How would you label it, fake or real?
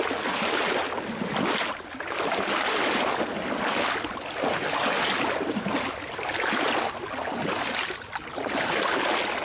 real